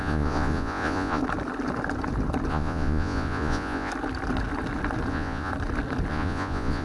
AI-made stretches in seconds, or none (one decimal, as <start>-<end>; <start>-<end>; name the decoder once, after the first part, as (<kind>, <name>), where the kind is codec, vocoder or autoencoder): 0.0-1.2 (vocoder, Vocos); 2.5-3.9; 5.1-5.5; 6.1-6.8